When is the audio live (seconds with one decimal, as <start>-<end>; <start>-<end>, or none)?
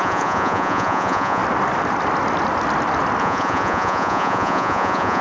1.4-3.2